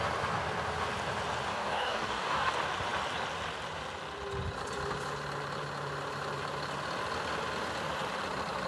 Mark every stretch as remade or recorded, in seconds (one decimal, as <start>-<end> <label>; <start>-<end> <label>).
0.0-1.5 recorded; 1.5-2.5 remade; 2.5-8.7 recorded